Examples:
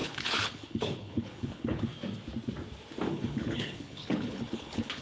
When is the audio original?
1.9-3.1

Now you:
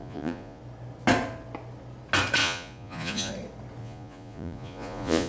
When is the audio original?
0.6-2.4; 3.3-3.8